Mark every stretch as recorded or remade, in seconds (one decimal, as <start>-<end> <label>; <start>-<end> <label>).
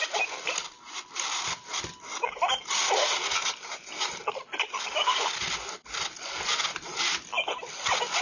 0.0-8.2 recorded